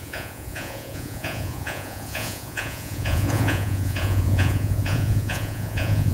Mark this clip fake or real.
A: fake